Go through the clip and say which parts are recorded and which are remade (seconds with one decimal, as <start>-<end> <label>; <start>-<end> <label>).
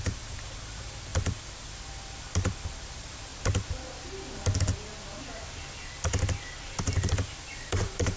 0.0-3.3 remade; 3.3-6.8 recorded; 6.8-8.2 remade